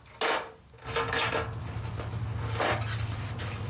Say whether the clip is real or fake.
real